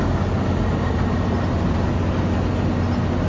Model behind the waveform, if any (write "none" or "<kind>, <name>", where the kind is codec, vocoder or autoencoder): none